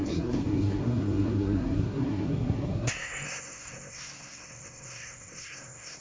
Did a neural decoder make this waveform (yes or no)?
yes